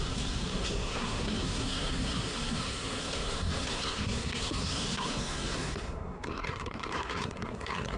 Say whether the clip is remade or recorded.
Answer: remade